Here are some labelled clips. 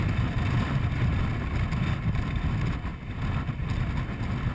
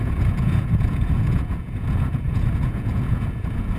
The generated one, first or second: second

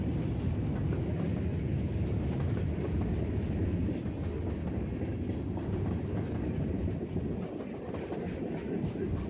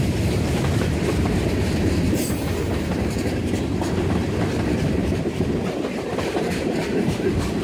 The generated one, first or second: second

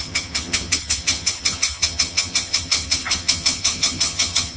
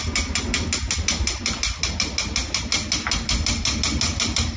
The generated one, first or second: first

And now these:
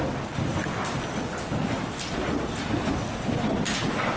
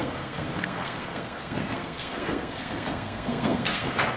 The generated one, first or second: second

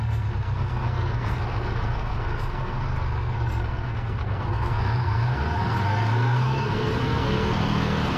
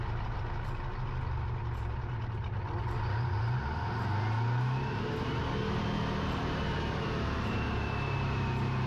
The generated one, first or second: first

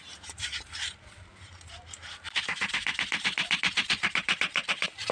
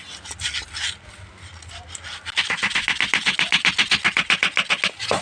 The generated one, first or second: first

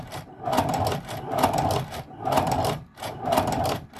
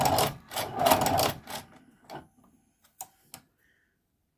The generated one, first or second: first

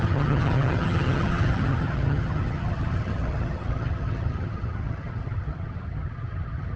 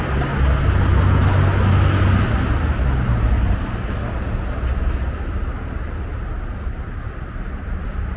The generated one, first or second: first